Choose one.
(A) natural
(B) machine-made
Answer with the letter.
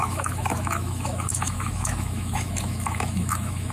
B